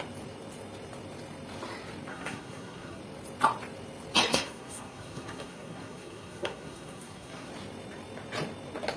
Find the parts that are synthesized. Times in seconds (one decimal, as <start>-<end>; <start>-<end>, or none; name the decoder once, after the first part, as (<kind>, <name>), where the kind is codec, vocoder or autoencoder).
2.1-3.0 (codec, SNAC); 4.3-7.5